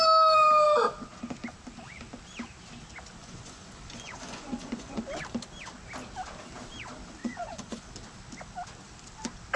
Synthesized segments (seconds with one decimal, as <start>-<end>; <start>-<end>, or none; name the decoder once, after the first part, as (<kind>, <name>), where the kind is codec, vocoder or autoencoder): 3.2-5.0 (vocoder, Vocos); 7.2-7.9